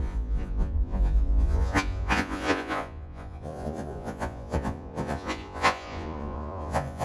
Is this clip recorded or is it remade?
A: remade